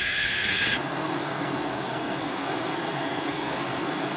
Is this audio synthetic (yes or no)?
yes